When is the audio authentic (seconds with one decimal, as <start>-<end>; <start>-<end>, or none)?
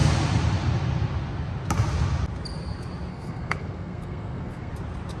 0.0-3.1; 4.7-5.2